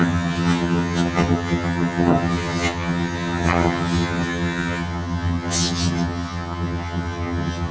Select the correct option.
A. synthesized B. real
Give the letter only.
A